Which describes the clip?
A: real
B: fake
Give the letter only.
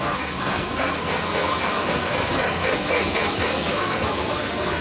B